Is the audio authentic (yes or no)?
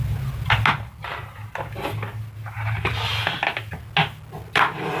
yes